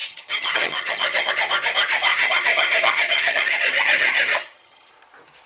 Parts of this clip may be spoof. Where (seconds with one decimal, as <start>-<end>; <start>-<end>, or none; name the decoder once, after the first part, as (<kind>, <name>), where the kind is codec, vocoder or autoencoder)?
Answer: 0.0-1.3 (vocoder, HiFi-GAN); 2.1-4.9